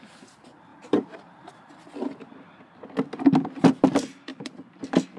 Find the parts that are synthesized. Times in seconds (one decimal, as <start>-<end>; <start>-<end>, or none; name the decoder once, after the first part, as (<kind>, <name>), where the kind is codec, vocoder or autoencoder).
0.7-1.5 (vocoder, BigVGAN v2); 4.3-4.8